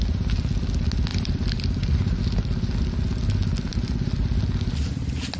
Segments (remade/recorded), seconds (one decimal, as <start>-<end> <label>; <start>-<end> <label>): 0.0-1.1 recorded; 1.1-2.2 remade; 2.2-5.4 recorded